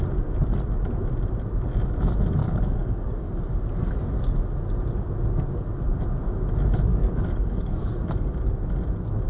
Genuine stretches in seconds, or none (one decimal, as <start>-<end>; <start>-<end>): 0.0-2.4; 3.3-6.9; 8.0-9.3